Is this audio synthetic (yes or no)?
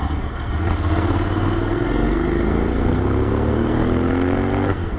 yes